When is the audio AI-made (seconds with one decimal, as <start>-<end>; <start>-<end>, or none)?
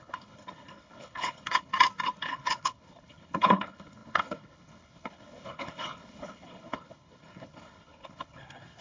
0.0-1.7; 2.2-8.8